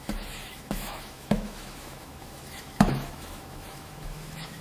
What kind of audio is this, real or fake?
fake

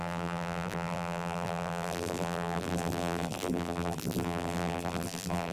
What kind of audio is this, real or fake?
fake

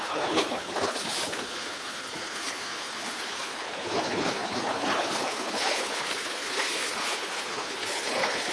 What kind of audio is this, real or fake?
fake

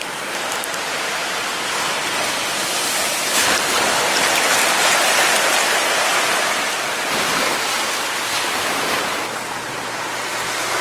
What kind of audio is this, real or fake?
real